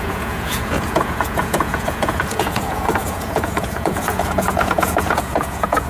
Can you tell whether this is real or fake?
fake